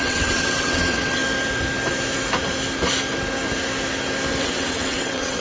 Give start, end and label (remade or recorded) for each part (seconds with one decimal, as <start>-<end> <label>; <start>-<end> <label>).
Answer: 0.0-1.2 remade; 1.2-4.4 recorded; 4.4-5.4 remade